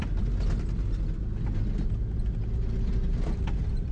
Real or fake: real